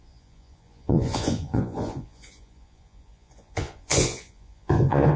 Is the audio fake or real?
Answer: fake